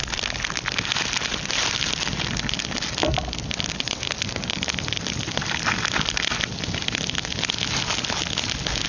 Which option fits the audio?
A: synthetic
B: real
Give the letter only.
B